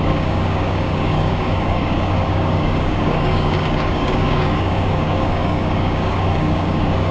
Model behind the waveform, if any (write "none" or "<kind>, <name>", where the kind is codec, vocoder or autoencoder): codec, DAC